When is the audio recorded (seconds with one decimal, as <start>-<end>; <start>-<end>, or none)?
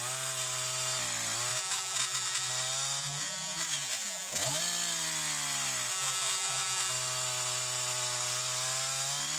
0.0-1.5; 2.5-3.0; 4.6-5.9; 6.9-9.4